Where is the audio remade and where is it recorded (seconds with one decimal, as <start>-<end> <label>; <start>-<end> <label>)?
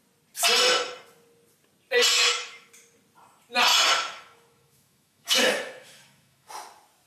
0.0-2.1 recorded; 2.1-2.7 remade; 2.7-3.7 recorded; 3.7-6.5 remade; 6.5-7.1 recorded